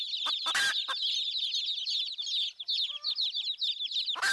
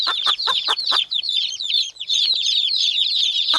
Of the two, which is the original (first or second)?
first